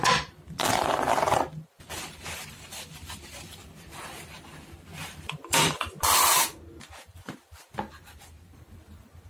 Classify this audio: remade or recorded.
remade